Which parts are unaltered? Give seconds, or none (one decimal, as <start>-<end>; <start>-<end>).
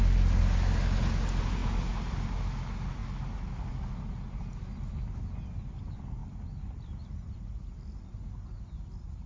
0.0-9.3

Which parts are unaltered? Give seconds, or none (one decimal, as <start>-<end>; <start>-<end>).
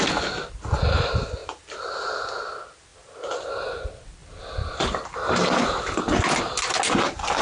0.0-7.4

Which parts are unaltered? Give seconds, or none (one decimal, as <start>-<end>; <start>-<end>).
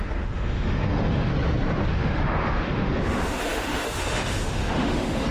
1.3-1.9